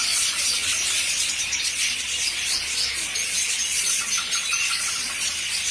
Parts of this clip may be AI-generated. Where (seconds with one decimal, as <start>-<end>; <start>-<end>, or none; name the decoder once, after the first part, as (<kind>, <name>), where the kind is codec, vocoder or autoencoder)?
0.0-5.7 (vocoder, Vocos)